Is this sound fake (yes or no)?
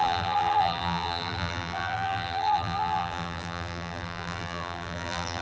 yes